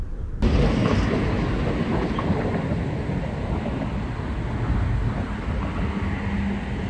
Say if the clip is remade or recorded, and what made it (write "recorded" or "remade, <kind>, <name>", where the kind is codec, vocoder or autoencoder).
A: recorded